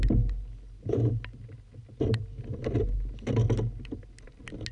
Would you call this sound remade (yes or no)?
no